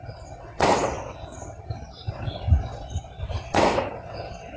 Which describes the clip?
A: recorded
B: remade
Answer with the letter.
B